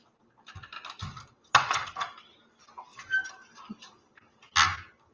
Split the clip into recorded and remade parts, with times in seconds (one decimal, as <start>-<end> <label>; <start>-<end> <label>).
0.0-5.1 recorded